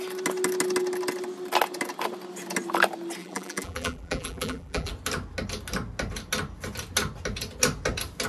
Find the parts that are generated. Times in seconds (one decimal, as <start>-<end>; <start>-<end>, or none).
3.2-4.9